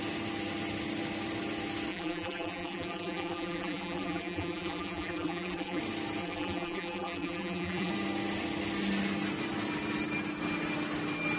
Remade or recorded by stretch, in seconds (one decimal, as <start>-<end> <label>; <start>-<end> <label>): 0.0-1.9 recorded; 1.9-5.8 remade; 5.8-6.2 recorded; 6.2-7.9 remade; 7.9-11.4 recorded